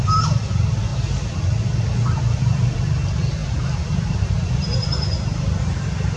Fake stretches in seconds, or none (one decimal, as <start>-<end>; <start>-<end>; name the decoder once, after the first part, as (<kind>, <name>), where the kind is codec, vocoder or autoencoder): 0.0-0.9 (vocoder, BigVGAN v2); 1.4-6.2